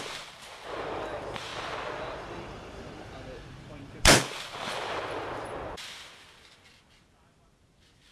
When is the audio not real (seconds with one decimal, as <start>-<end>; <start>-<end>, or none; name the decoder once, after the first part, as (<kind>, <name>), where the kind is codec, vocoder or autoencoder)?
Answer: 0.0-8.1 (vocoder, BigVGAN v2)